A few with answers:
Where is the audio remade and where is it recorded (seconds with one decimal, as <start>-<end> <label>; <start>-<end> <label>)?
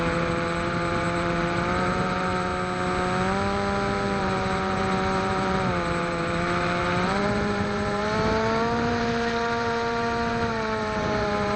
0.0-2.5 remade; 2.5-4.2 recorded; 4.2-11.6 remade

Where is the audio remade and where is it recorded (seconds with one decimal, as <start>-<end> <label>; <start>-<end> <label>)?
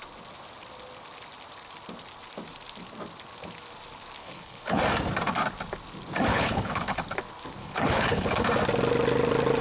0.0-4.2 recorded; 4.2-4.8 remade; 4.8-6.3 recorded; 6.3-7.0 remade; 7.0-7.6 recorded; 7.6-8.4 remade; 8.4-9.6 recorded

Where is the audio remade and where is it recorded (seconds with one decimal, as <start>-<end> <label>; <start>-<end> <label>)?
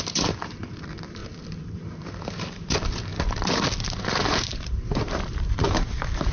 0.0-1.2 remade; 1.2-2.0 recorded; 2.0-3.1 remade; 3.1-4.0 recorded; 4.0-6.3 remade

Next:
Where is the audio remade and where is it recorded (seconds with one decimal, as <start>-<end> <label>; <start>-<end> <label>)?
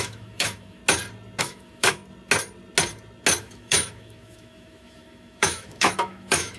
0.0-0.8 remade; 0.8-1.4 recorded; 1.4-2.0 remade; 2.0-3.4 recorded; 3.4-6.6 remade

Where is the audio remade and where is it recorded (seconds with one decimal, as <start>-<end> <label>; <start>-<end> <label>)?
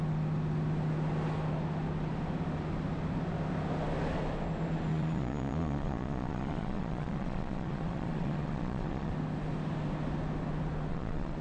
0.0-4.9 recorded; 4.9-9.1 remade; 9.1-10.9 recorded; 10.9-11.4 remade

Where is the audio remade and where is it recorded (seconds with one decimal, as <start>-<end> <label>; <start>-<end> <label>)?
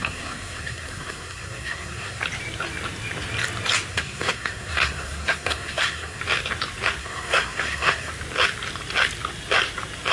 0.0-2.2 remade; 2.2-3.9 recorded; 3.9-6.2 remade; 6.2-7.0 recorded; 7.0-8.1 remade; 8.1-10.1 recorded